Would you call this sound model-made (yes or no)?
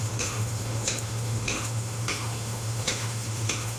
yes